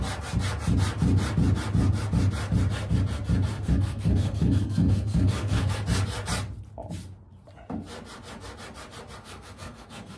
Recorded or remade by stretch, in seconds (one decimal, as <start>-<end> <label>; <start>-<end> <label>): 0.0-3.5 recorded; 3.5-5.7 remade; 5.7-9.2 recorded; 9.2-10.2 remade